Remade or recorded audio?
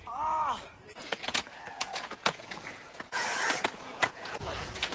remade